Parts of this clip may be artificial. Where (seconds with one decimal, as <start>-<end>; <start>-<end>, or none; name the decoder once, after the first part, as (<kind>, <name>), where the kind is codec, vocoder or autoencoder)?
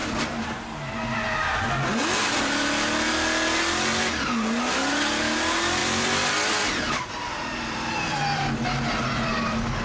5.8-9.3 (vocoder, BigVGAN v2)